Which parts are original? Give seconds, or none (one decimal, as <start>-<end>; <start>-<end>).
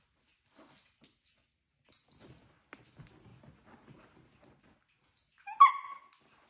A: 0.0-6.5